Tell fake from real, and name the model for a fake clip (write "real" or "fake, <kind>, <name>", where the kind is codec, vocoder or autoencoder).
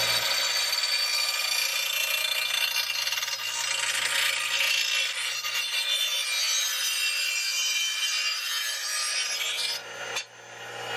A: real